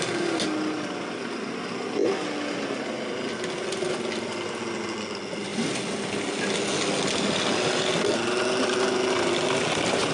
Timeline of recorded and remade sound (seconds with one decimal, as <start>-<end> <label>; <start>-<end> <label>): 0.0-10.1 recorded